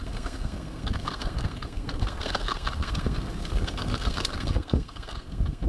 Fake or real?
fake